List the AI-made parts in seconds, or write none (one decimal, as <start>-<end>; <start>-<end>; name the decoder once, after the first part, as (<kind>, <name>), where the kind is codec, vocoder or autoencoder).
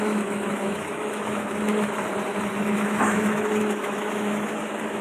0.0-2.1 (autoencoder, DAC-VAE); 2.6-5.0